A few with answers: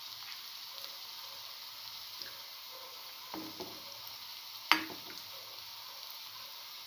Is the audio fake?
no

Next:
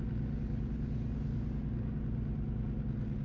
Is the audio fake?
no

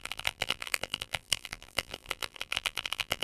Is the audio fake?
yes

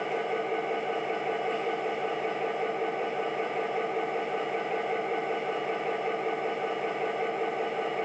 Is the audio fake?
yes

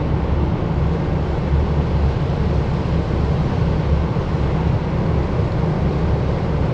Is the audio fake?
no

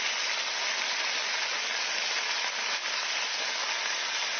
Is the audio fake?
no